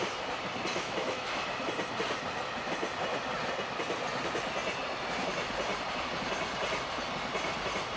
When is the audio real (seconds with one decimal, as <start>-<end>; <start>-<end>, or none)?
0.0-0.7; 1.3-8.0